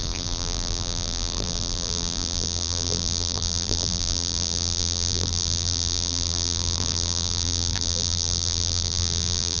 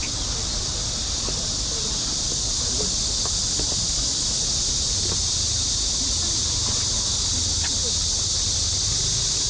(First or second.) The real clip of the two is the second